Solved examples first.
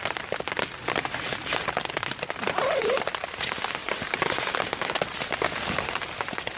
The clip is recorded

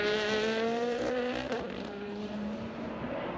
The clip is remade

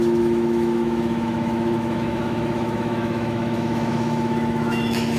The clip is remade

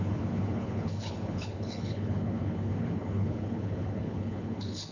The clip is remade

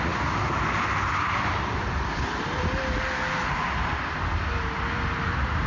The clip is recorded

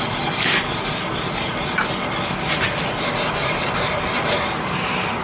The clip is recorded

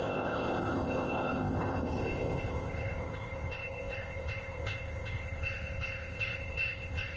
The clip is remade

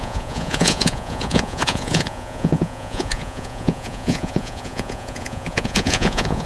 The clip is remade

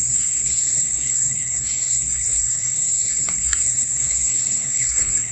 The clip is remade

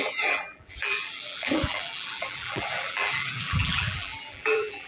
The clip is remade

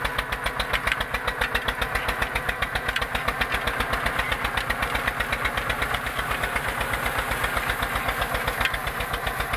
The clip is recorded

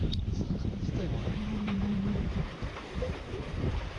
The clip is remade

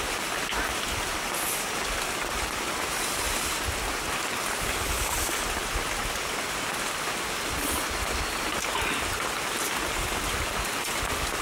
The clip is recorded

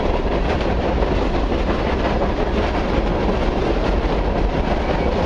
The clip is recorded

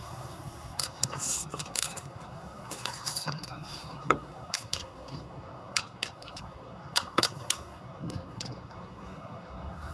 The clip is remade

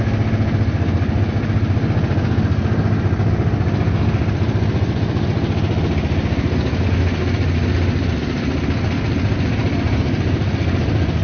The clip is recorded